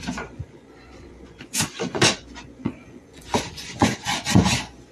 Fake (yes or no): yes